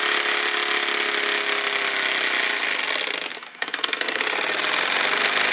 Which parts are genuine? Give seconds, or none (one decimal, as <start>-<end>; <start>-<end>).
0.0-3.3; 4.2-5.5